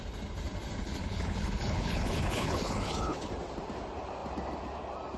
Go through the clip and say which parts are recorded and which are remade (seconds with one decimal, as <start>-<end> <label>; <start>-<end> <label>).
0.0-0.8 recorded; 0.8-3.3 remade; 3.3-5.2 recorded